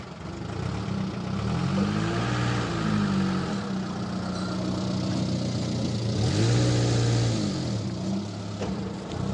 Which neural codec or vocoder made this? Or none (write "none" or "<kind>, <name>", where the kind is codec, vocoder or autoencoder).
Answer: none